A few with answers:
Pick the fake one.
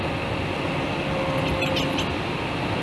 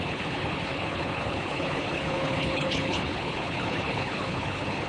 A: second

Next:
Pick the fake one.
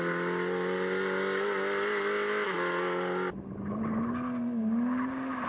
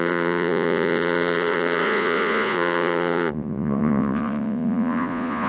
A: second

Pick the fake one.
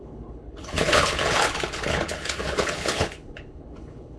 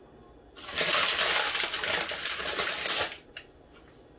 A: first